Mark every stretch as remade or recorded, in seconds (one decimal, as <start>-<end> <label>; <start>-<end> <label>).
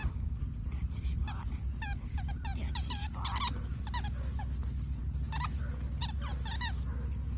0.0-7.4 recorded